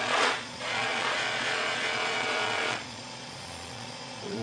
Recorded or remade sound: remade